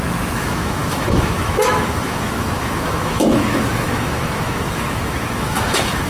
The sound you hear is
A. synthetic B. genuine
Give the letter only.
A